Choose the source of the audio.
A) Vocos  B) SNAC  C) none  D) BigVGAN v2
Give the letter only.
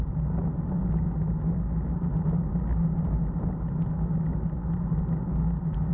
C